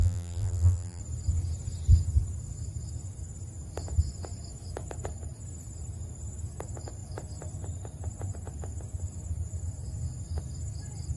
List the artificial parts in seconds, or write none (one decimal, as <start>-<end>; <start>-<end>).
0.0-1.0